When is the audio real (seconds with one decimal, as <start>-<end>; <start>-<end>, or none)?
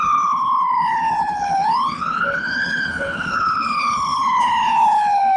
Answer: none